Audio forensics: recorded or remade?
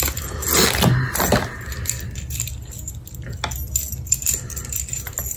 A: recorded